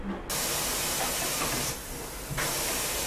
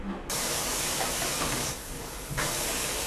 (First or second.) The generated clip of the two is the second